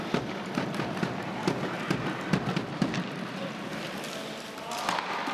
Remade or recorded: recorded